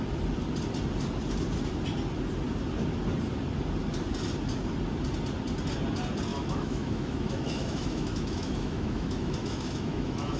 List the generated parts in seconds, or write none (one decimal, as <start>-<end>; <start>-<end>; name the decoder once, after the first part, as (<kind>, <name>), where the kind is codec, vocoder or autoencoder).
6.3-10.4 (autoencoder, DAC-VAE)